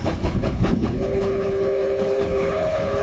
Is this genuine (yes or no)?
no